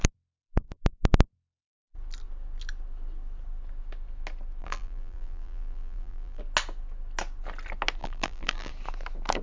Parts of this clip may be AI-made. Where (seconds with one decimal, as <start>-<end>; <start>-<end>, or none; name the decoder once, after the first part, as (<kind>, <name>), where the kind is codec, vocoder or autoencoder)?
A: 4.6-6.4 (vocoder, BigVGAN v2); 8.0-8.7

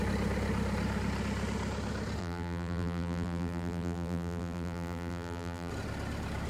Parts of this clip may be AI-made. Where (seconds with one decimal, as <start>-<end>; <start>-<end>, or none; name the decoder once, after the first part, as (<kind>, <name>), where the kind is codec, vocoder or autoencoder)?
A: 2.2-5.7 (vocoder, BigVGAN v2)

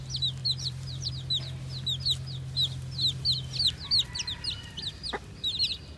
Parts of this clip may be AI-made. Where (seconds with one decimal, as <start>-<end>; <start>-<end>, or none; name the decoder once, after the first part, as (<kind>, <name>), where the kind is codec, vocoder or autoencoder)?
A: 0.4-1.1 (vocoder, BigVGAN v2)

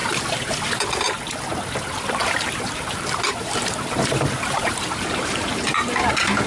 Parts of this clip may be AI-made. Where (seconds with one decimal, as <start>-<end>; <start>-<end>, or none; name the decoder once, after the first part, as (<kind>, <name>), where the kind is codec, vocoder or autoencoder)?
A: 0.0-0.7 (vocoder, BigVGAN v2); 2.2-6.1